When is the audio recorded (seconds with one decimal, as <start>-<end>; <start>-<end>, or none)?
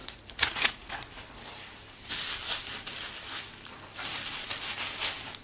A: 1.1-5.4